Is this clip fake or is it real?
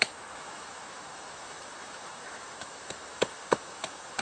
fake